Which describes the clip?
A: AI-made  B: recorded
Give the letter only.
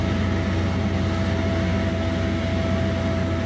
B